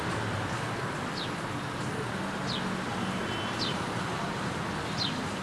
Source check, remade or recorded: recorded